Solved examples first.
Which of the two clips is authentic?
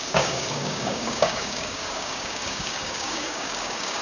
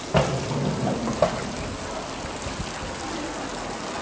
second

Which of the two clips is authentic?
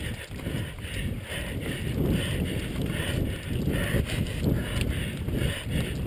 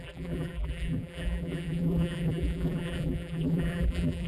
first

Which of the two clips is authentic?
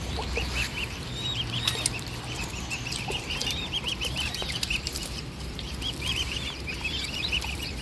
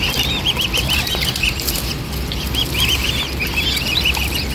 second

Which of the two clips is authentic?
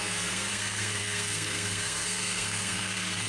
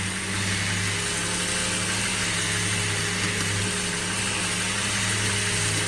second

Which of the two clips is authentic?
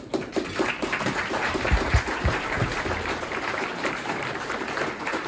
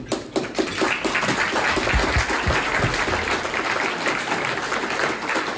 second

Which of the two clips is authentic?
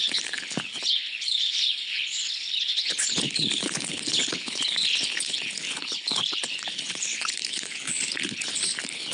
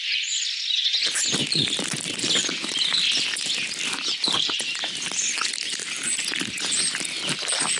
second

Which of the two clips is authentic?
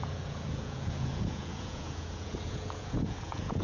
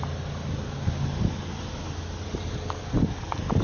second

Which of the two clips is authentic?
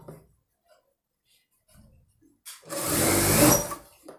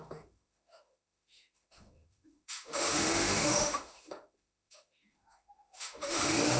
first